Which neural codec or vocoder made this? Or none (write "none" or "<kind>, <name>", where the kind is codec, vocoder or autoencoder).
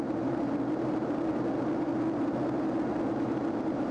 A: none